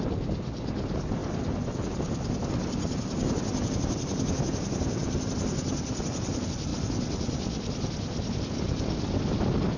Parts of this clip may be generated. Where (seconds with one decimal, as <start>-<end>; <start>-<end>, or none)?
none